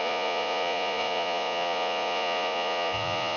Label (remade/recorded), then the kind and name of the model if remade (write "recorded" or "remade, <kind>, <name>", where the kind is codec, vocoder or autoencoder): remade, vocoder, Vocos